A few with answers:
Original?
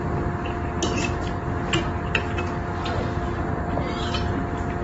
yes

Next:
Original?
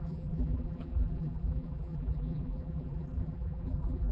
no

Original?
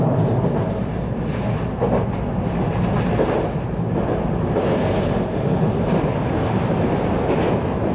yes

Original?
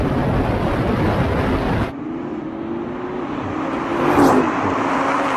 yes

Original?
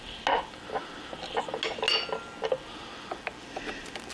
yes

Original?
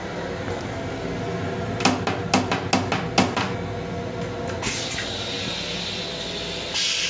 yes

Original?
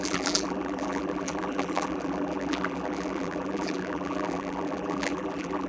no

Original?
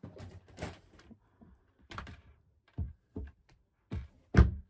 no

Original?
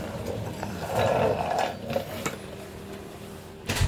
no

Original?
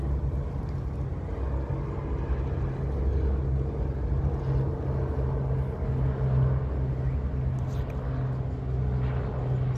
yes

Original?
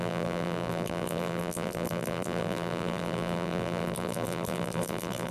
no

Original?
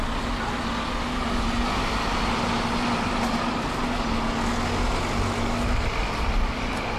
yes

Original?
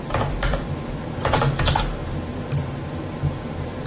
no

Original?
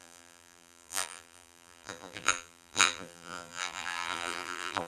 no